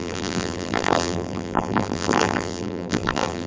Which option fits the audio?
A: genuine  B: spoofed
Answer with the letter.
B